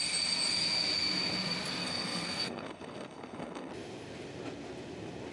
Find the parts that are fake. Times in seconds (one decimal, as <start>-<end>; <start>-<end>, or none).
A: 1.8-3.7